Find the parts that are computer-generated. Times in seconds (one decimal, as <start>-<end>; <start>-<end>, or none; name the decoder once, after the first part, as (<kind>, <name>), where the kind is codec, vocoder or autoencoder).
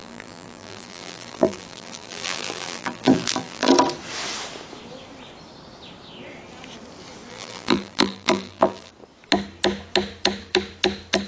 0.0-3.7 (vocoder, BigVGAN v2); 7.3-8.9